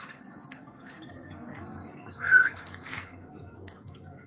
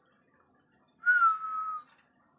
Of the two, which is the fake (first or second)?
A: first